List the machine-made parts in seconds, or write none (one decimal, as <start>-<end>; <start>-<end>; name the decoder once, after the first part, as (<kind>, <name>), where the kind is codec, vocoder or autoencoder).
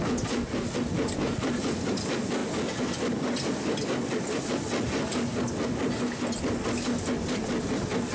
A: none